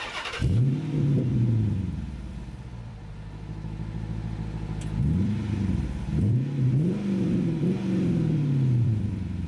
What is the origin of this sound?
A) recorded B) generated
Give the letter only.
B